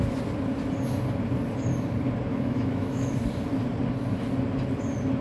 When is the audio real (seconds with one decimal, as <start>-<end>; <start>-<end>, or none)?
0.0-2.3; 3.1-5.2